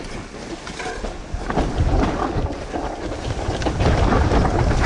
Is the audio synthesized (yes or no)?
no